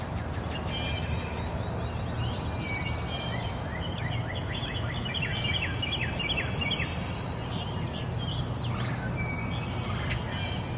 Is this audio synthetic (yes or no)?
no